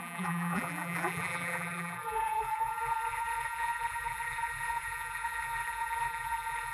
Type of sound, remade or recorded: remade